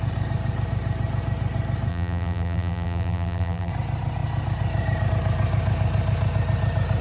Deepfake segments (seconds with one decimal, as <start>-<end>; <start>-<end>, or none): 1.9-3.7